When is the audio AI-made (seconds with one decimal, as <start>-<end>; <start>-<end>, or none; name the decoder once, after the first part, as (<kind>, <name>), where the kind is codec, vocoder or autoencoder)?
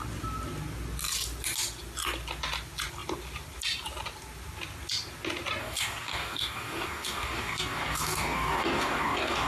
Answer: 5.6-9.5 (codec, DAC)